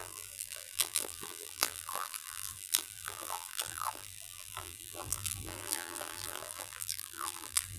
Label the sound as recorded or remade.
remade